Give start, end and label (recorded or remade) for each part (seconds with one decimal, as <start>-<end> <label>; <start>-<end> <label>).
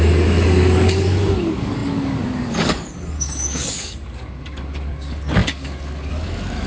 0.0-6.7 remade